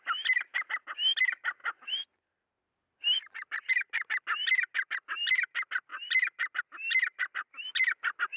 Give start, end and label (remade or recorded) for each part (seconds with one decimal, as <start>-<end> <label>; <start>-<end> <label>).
0.0-8.4 recorded